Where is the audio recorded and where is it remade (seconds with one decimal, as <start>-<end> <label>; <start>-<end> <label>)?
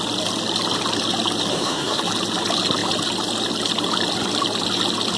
0.0-1.5 recorded; 1.5-2.0 remade; 2.0-5.2 recorded